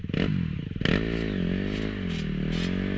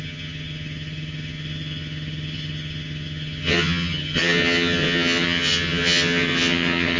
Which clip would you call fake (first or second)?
second